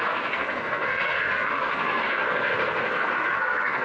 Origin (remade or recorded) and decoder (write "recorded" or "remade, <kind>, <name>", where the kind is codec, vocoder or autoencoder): remade, codec, SNAC